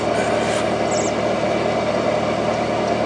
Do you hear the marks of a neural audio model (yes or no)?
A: no